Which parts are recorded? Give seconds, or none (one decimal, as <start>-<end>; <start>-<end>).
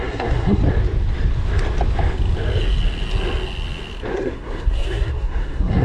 0.6-4.1